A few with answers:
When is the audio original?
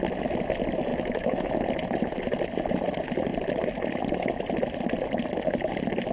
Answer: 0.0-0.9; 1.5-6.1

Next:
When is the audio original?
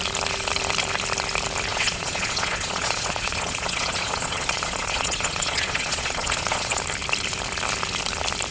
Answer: 0.0-1.7; 6.8-8.5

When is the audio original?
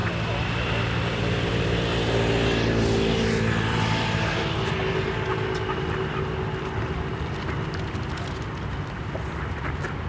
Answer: 0.0-10.1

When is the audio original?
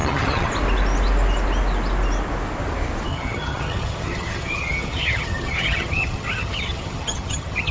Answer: 0.5-3.1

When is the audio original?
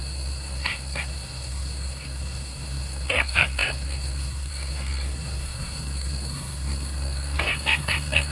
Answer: none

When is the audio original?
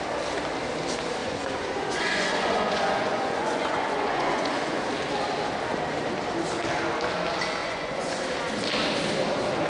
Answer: 0.0-1.2; 4.8-7.6; 8.2-9.7